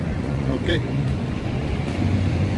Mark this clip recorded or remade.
remade